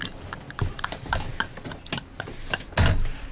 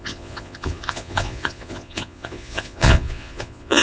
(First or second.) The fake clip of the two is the second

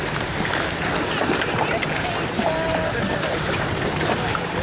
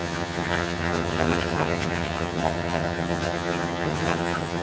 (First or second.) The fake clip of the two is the second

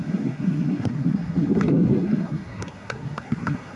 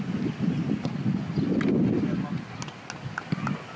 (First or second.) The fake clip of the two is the first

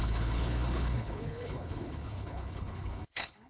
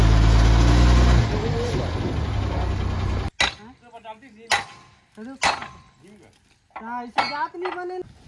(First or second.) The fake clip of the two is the first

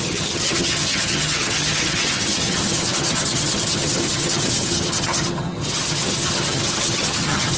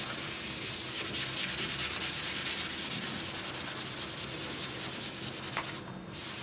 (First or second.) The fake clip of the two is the first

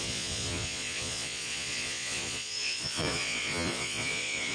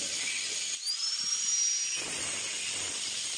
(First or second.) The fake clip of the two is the first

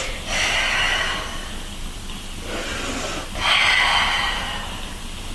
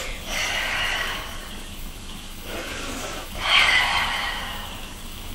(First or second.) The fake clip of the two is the second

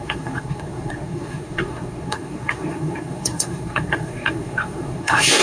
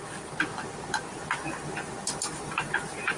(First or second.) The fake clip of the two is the first